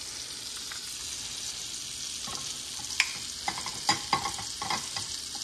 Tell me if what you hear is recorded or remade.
recorded